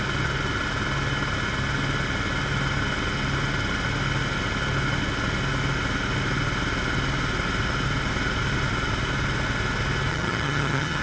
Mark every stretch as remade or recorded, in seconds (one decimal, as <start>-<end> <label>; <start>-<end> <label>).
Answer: 0.0-10.1 recorded; 10.1-11.0 remade